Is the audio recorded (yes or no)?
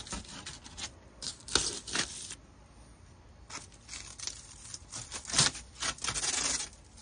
yes